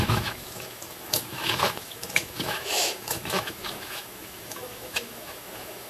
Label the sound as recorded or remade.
remade